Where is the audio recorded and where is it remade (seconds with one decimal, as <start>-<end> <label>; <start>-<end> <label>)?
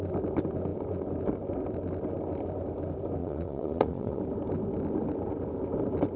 0.0-3.2 recorded; 3.2-4.2 remade; 4.2-6.2 recorded